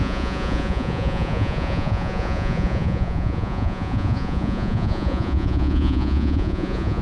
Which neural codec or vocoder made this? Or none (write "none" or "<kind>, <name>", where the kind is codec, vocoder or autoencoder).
vocoder, Vocos